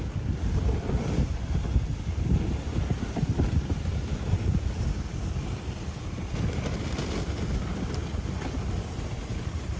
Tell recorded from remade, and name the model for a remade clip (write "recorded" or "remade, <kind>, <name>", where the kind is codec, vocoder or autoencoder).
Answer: recorded